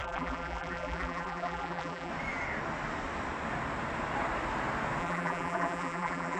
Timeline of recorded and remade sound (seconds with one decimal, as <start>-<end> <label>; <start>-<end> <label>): 0.0-2.1 remade; 2.1-5.0 recorded; 5.0-6.4 remade